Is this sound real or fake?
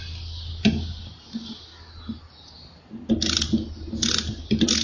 real